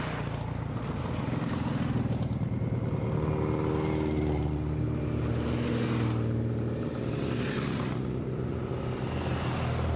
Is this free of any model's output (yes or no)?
yes